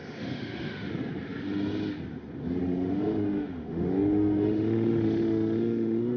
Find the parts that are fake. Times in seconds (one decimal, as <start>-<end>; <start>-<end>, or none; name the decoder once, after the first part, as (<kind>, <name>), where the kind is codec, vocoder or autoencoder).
0.0-0.9 (autoencoder, DAC-VAE); 2.6-6.2